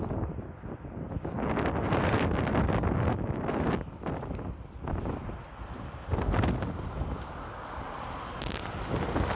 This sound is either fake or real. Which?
real